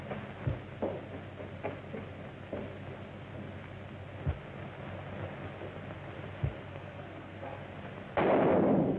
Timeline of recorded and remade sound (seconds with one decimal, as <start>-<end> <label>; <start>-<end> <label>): 0.0-6.7 recorded; 6.7-7.6 remade; 7.6-9.0 recorded